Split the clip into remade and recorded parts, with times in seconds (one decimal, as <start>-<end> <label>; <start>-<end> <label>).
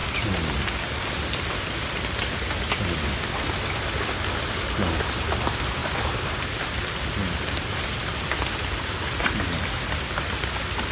0.0-5.8 recorded; 5.8-10.9 remade